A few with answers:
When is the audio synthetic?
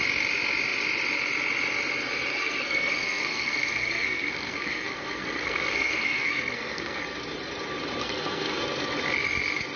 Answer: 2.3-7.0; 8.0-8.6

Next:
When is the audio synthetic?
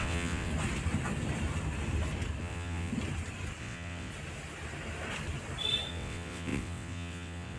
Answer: 0.0-0.5; 2.4-2.9; 3.6-4.1; 5.9-7.6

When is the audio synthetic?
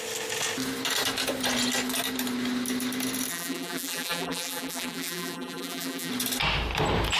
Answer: 3.3-6.1